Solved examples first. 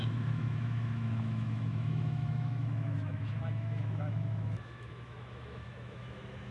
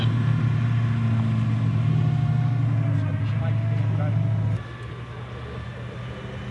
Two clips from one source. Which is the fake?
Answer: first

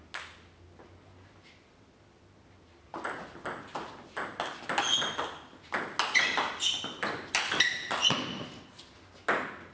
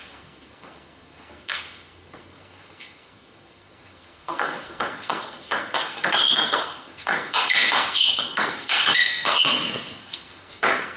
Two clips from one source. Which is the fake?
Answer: second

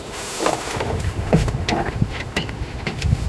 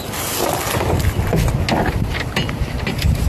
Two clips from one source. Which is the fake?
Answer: first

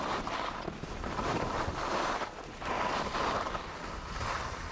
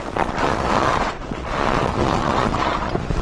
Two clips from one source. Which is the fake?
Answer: second